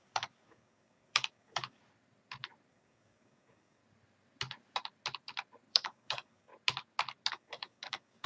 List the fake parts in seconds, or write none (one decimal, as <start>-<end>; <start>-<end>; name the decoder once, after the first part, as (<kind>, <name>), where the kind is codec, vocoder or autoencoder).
0.0-1.8 (codec, DAC); 2.7-3.8; 5.7-6.5; 7.3-8.3